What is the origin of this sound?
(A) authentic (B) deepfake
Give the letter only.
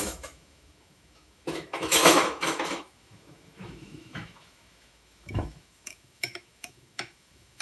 B